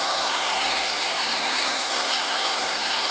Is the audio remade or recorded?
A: remade